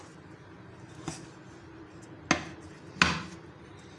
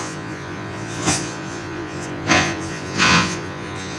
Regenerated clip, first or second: second